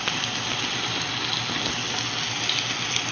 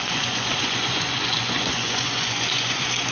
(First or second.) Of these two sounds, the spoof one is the second